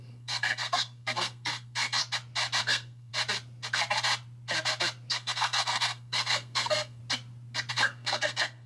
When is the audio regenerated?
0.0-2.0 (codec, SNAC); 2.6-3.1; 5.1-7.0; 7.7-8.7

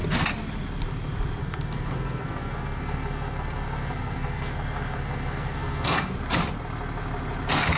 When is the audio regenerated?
1.4-6.1 (codec, SNAC)

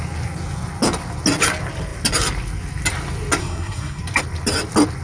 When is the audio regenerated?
3.4-4.0 (codec, SNAC)

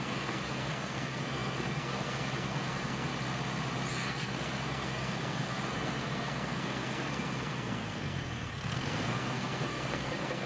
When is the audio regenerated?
0.0-3.1 (codec, SNAC); 3.9-10.5